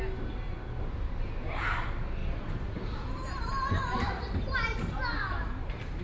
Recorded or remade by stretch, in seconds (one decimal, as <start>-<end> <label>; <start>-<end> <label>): 0.0-2.2 recorded; 2.2-6.0 remade

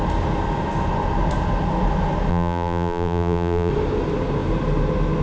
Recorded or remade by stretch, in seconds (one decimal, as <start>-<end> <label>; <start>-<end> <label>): 0.0-2.3 recorded; 2.3-3.7 remade; 3.7-5.2 recorded

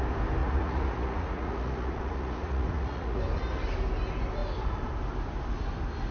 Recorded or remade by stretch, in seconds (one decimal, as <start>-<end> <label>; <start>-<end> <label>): 0.0-0.4 recorded; 0.4-3.2 remade; 3.2-6.1 recorded

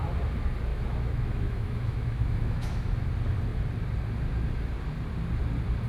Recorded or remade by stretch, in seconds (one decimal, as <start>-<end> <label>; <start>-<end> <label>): 0.0-0.7 recorded; 0.7-3.1 remade; 3.1-5.9 recorded

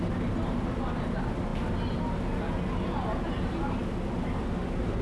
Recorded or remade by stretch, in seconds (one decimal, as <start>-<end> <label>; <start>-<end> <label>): 0.0-5.0 recorded

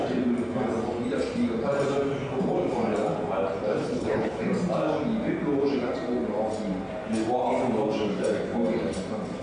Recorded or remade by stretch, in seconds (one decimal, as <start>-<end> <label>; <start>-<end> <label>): 0.0-3.8 recorded; 3.8-4.4 remade; 4.4-9.4 recorded